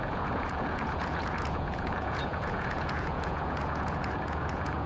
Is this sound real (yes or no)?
no